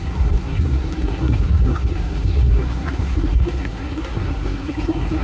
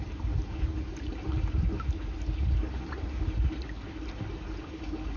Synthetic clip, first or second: first